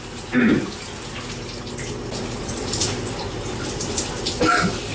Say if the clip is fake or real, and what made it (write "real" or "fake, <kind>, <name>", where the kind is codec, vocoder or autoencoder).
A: real